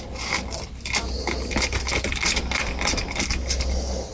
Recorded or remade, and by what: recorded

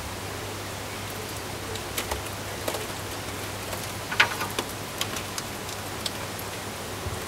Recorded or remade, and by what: recorded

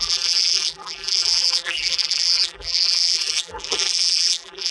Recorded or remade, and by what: remade, vocoder, BigVGAN v2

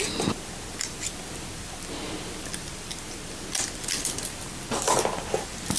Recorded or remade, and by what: remade, vocoder, BigVGAN v2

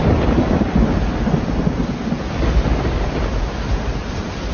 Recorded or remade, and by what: recorded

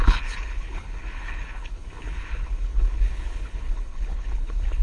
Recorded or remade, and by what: remade, codec, HILCodec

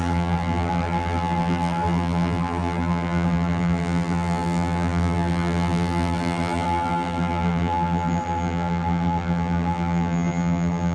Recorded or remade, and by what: remade, vocoder, BigVGAN v2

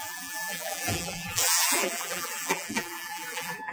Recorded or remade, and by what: remade, vocoder, BigVGAN v2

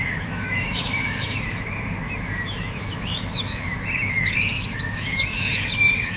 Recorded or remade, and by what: remade, autoencoder, DAC-VAE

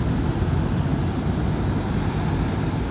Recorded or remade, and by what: recorded